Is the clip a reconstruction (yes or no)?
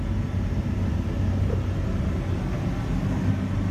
no